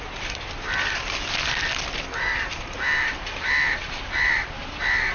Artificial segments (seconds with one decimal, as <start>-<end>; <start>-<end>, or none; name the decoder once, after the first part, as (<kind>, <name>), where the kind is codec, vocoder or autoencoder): none